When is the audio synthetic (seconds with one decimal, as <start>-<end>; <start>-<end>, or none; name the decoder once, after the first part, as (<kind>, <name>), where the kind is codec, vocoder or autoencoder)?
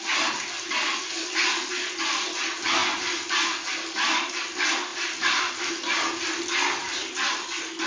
2.8-4.4 (vocoder, BigVGAN v2); 4.9-5.7